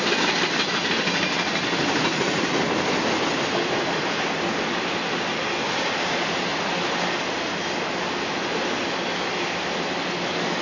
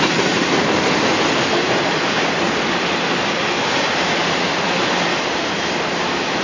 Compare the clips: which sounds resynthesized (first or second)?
second